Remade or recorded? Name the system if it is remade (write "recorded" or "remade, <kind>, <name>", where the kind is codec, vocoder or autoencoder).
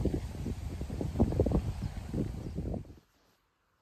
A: recorded